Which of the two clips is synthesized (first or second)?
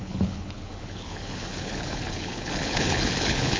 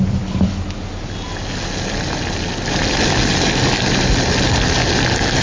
first